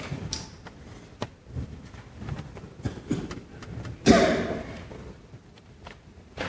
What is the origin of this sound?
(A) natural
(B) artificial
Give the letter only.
B